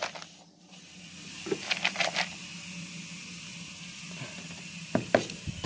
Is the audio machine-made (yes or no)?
no